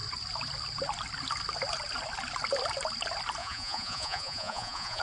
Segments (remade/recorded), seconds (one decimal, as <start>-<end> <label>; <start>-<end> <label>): 0.0-3.4 recorded; 3.4-5.0 remade